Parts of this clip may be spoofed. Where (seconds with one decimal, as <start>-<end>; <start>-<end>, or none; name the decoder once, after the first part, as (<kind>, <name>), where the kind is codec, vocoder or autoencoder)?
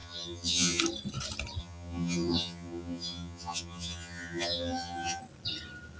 0.0-0.8 (vocoder, HiFi-GAN); 1.6-5.2